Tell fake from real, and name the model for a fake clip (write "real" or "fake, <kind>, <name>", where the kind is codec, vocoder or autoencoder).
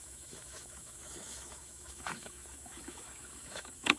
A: fake, autoencoder, DAC-VAE